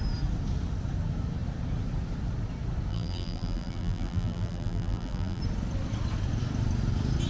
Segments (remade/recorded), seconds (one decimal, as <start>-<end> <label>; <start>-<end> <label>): 0.0-2.9 recorded; 2.9-5.4 remade; 5.4-7.3 recorded

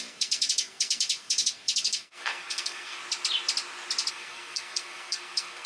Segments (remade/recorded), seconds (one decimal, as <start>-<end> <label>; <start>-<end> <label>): 0.0-3.0 remade; 3.0-4.1 recorded; 4.1-5.7 remade

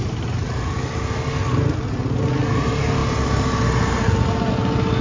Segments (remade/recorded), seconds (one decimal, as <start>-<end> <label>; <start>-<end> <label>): 0.0-5.0 recorded

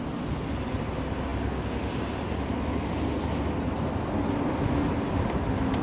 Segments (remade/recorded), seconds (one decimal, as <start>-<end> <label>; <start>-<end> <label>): 0.0-5.8 recorded